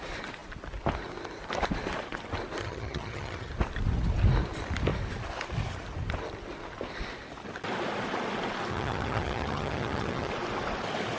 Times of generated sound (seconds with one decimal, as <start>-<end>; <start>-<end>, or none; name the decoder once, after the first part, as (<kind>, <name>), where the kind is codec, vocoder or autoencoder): 2.6-3.5 (vocoder, HiFi-GAN); 8.7-10.3